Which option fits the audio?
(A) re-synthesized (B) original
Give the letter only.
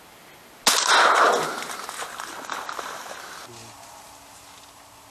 B